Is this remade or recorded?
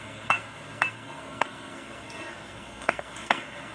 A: remade